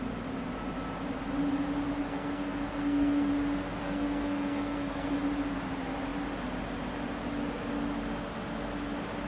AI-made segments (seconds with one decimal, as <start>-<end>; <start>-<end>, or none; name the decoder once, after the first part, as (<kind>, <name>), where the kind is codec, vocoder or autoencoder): 2.0-3.3 (codec, SNAC); 3.8-5.2